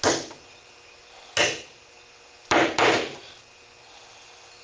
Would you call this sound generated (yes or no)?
no